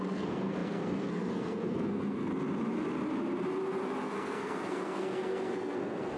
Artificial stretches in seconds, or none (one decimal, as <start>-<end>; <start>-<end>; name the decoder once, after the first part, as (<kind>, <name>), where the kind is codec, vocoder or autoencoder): 0.0-2.3 (codec, SNAC); 4.0-6.2